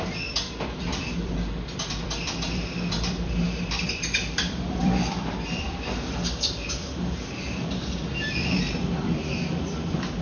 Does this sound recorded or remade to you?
remade